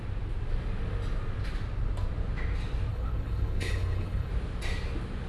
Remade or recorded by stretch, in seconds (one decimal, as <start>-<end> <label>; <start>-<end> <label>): 0.0-2.9 recorded; 2.9-4.3 remade; 4.3-5.3 recorded